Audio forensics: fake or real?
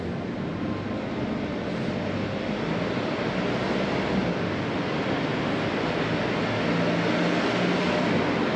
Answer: real